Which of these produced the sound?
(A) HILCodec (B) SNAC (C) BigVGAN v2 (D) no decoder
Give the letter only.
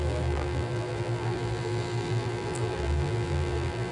C